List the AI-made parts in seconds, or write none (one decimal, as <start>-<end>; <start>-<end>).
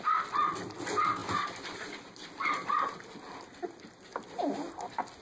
none